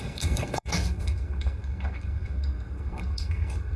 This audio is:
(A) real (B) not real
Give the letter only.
B